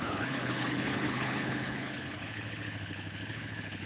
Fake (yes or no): yes